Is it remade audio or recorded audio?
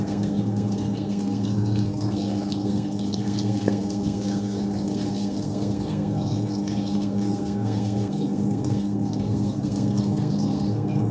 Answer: remade